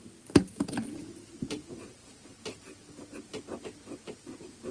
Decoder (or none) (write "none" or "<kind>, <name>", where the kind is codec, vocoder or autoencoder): none